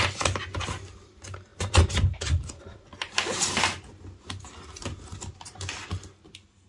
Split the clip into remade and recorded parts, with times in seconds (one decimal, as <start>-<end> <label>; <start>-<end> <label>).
0.0-1.5 recorded; 1.5-2.6 remade; 2.6-6.7 recorded